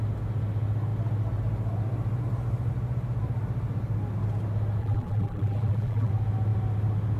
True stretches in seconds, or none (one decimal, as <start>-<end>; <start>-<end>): 0.0-4.8; 6.1-7.2